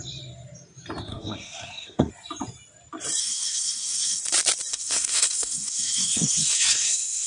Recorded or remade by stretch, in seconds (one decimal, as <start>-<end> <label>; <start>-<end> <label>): 0.0-1.1 recorded; 1.1-2.1 remade; 2.1-3.2 recorded; 3.2-4.2 remade; 4.2-4.7 recorded; 4.7-7.3 remade